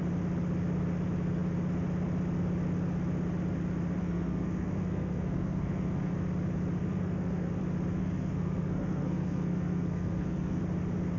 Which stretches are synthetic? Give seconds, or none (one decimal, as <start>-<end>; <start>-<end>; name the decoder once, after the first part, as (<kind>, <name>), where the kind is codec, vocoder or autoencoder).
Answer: 4.0-6.1 (codec, SNAC); 6.8-7.6; 8.0-10.6